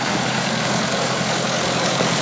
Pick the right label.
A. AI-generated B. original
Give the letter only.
A